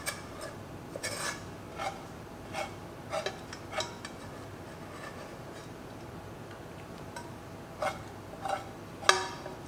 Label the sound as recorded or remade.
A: recorded